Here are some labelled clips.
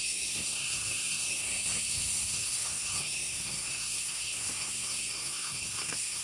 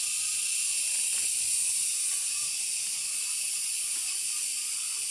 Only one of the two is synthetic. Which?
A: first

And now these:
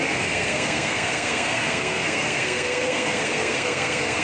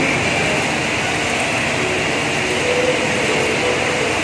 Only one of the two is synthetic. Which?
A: first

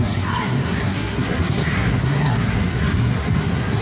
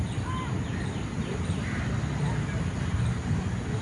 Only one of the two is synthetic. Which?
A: first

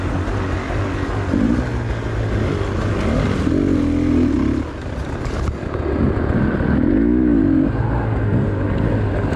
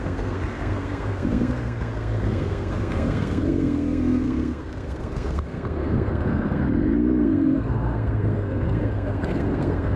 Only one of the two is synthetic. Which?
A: second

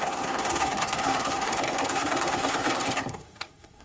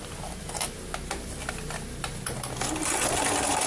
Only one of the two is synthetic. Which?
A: first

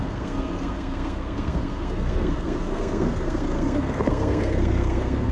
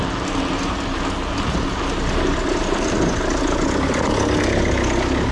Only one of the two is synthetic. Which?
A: first